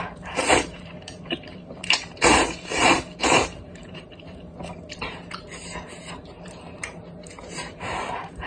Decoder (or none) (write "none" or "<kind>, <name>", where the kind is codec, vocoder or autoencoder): vocoder, BigVGAN v2